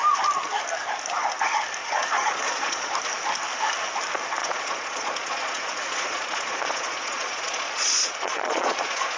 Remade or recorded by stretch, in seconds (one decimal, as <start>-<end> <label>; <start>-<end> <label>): 0.0-1.8 recorded; 1.8-2.9 remade; 2.9-4.4 recorded; 4.4-9.2 remade